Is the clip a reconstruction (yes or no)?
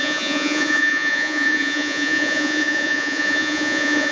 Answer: yes